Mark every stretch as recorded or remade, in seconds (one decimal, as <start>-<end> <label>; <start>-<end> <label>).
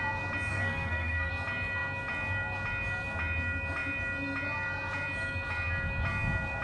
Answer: 0.0-0.5 recorded; 0.5-1.3 remade; 1.3-6.6 recorded